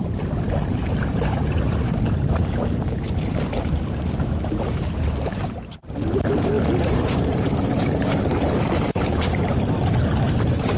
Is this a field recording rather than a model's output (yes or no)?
no